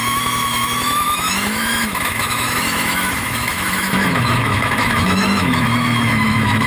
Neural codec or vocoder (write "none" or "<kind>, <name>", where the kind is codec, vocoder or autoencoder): autoencoder, DAC-VAE